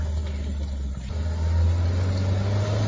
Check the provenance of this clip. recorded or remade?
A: recorded